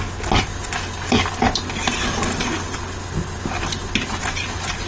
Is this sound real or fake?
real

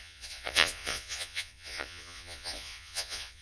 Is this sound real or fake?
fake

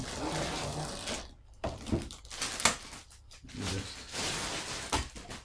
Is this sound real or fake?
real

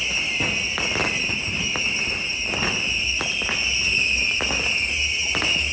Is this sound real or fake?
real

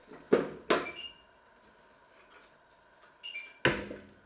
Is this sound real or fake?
real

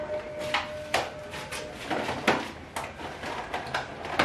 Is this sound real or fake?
real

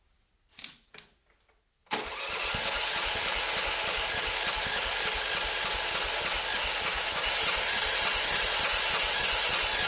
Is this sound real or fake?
real